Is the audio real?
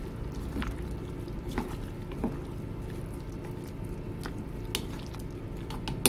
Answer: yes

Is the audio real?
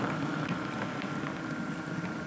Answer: yes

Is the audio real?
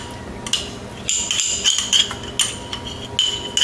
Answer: yes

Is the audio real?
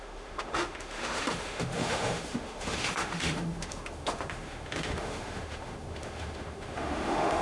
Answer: no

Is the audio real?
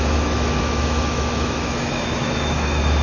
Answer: no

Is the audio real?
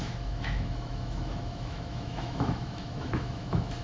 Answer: no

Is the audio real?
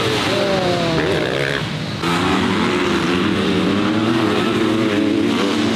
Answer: yes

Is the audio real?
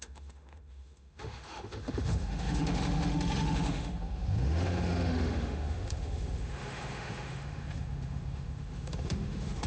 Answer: no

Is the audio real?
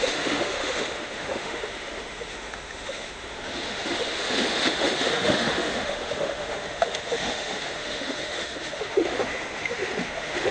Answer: no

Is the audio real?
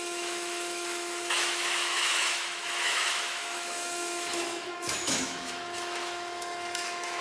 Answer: no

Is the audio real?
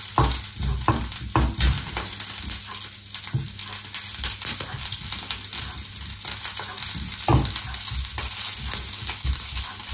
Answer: yes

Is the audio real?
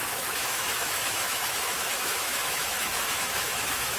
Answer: no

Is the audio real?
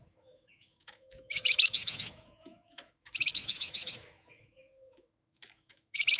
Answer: no